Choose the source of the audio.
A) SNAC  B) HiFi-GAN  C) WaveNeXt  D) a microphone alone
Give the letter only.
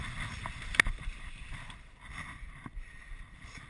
D